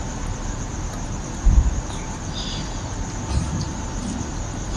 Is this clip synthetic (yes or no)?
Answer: no